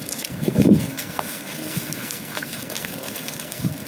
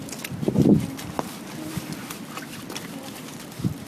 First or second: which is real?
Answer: second